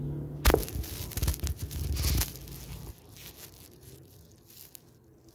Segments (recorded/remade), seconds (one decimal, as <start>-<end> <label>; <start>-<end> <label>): 0.0-5.3 recorded